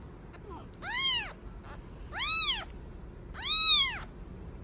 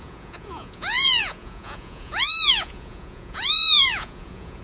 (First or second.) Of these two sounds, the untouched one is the first